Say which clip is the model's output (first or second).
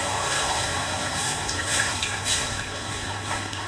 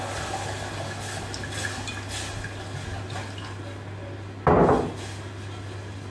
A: first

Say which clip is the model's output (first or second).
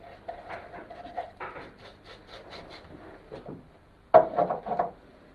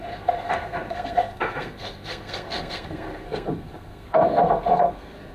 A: second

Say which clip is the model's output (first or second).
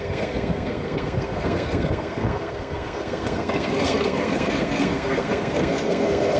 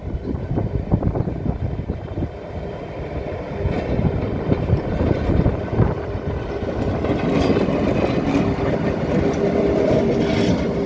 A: first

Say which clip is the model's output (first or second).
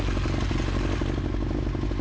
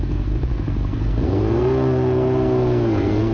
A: second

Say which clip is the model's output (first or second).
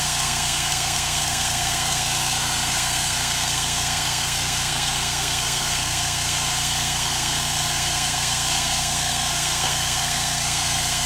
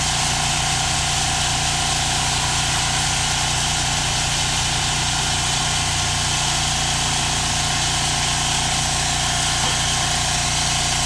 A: first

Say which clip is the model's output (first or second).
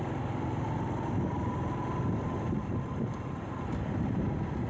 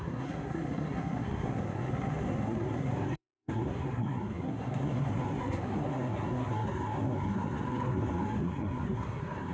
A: second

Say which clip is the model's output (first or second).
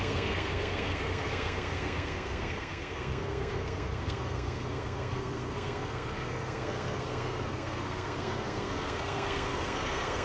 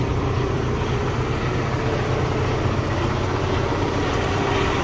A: first